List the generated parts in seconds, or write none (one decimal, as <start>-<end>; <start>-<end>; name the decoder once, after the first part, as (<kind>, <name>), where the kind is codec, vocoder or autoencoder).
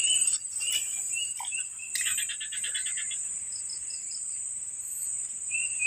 none